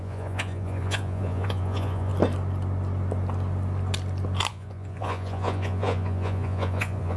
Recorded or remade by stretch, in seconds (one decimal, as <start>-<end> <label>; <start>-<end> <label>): 0.0-2.1 remade; 2.1-4.5 recorded; 4.5-7.2 remade